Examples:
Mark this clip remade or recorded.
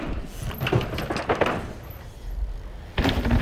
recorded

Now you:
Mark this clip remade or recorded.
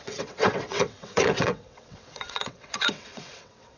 remade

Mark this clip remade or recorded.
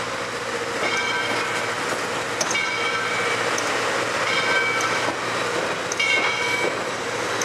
recorded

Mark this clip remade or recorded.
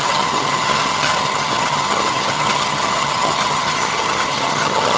remade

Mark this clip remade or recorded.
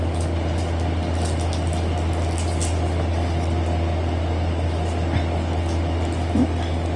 recorded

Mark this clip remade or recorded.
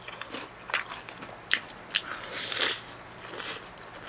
recorded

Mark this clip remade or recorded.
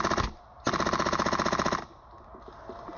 recorded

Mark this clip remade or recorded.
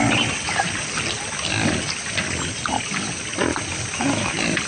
recorded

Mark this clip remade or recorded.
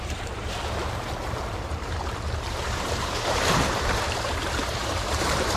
remade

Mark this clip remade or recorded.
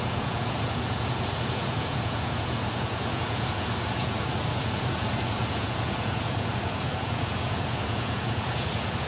remade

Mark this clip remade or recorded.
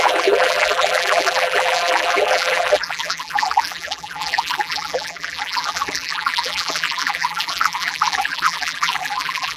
remade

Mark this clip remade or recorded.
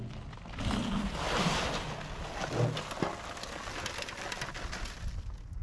recorded